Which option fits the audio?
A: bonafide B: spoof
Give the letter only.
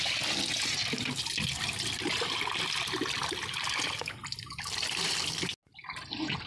A